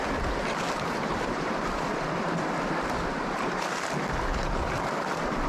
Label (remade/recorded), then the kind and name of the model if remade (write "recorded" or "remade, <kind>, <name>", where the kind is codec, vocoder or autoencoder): remade, vocoder, BigVGAN v2